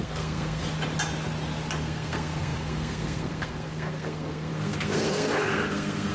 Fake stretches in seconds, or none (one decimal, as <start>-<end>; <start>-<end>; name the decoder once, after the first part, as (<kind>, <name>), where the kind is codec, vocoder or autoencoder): 0.0-0.6 (codec, SNAC); 1.8-6.1